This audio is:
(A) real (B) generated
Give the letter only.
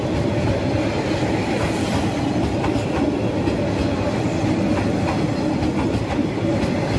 A